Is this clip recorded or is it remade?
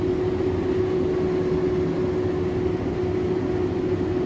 recorded